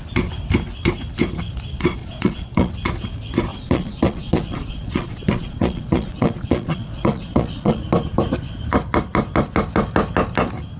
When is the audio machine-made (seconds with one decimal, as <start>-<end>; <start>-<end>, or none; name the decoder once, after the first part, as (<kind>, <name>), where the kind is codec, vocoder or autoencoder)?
2.0-2.7 (vocoder, Vocos); 3.5-7.8